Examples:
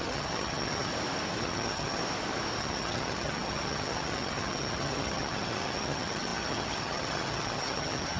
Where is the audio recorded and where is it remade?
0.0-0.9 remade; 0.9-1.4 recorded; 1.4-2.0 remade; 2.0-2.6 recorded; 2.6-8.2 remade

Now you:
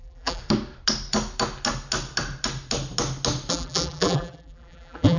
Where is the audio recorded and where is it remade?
0.0-0.4 remade; 0.4-3.5 recorded; 3.5-5.2 remade

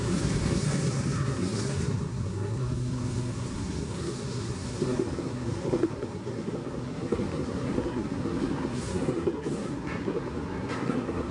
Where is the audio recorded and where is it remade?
0.0-11.3 remade

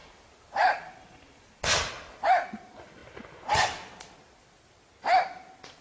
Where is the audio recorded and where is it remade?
0.0-5.8 recorded

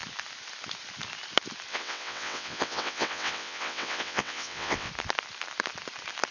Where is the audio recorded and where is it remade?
0.0-1.7 recorded; 1.7-4.9 remade; 4.9-6.3 recorded

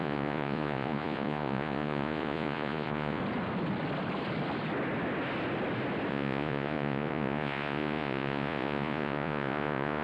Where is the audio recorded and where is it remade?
0.0-3.2 remade; 3.2-6.1 recorded; 6.1-10.0 remade

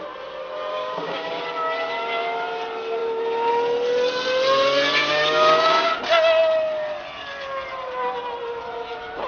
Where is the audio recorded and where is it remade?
0.0-0.7 recorded; 0.7-1.4 remade; 1.4-5.0 recorded; 5.0-5.9 remade; 5.9-9.3 recorded